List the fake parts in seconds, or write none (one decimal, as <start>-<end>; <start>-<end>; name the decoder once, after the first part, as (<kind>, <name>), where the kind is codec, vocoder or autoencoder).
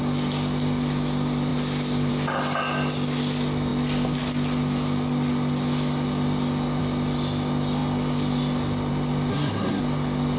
9.3-9.8 (codec, SNAC)